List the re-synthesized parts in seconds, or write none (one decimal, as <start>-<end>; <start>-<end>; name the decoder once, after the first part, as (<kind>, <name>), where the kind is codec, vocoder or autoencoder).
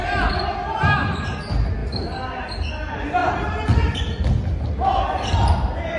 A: 3.2-4.3 (vocoder, BigVGAN v2)